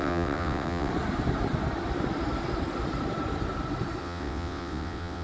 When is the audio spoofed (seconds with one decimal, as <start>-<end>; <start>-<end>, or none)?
0.0-0.9; 4.0-5.2